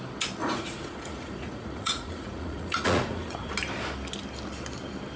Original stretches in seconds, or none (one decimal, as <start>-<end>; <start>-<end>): 0.0-0.4; 3.5-5.2